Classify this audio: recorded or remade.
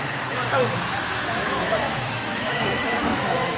remade